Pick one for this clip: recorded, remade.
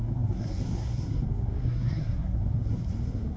remade